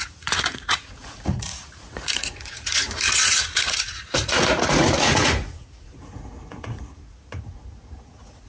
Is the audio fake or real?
fake